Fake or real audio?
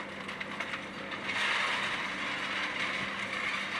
real